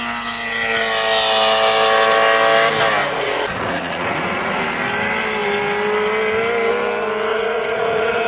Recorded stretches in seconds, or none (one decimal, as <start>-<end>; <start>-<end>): 0.0-3.0; 4.6-7.3

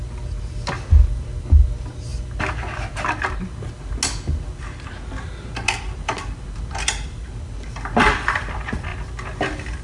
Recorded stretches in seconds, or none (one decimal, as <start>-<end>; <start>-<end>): 0.0-9.8

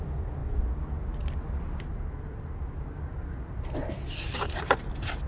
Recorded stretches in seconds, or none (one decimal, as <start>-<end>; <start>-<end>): 0.0-5.3

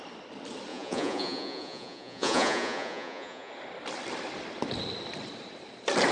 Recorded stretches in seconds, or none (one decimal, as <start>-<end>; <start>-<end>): 0.0-0.7; 3.5-6.1

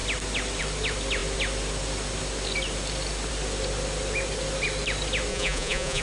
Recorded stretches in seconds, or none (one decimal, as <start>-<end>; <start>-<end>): 0.0-5.3

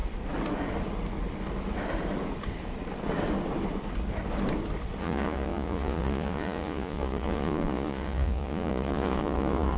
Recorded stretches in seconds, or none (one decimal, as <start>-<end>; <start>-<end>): 0.0-5.0

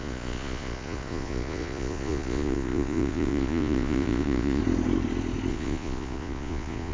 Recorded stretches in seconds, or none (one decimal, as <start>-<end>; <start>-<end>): 4.6-5.5